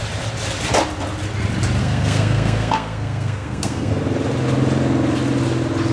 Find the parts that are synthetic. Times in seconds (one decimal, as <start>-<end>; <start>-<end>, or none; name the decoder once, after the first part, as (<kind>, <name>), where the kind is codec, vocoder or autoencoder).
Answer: 1.8-3.9 (codec, SNAC)